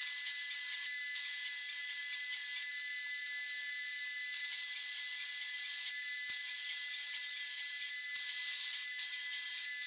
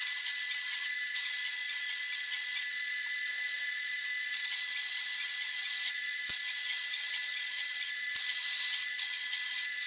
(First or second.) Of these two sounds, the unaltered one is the first